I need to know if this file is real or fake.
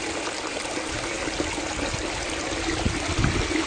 real